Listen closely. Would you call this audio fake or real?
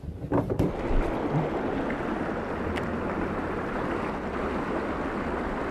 real